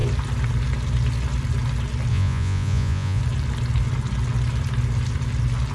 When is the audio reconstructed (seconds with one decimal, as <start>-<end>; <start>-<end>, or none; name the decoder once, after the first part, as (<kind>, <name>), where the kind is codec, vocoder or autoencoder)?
2.1-3.2 (vocoder, Vocos)